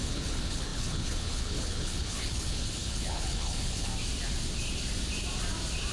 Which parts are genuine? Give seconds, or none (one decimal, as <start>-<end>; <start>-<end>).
3.9-5.9